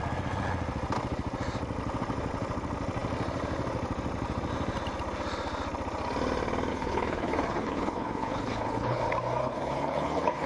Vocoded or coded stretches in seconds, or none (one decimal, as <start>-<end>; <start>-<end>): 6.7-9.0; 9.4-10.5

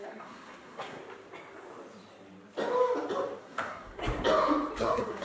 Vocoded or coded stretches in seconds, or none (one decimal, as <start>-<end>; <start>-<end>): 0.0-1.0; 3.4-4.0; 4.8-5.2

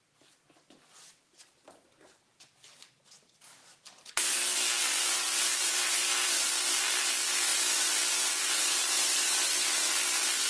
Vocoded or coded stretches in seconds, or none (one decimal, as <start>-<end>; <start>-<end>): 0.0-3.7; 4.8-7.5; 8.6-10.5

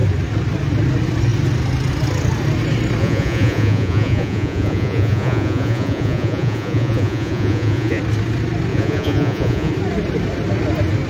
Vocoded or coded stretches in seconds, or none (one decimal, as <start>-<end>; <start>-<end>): 3.0-8.0; 8.7-9.7

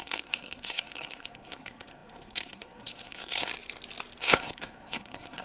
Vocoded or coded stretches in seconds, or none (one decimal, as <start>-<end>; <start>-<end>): 0.0-3.5; 4.2-5.4

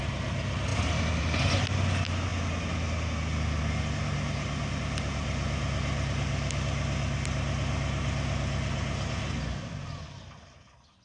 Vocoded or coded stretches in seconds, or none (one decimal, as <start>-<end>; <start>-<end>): none

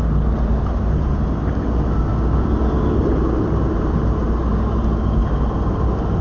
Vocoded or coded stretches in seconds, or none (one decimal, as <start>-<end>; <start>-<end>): 0.0-1.4; 3.0-5.2; 5.8-6.2

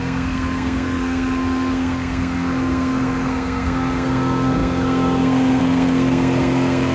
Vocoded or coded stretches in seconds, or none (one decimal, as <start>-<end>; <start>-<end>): 0.0-6.9